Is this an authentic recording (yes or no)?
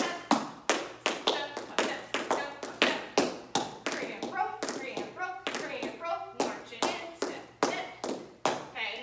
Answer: yes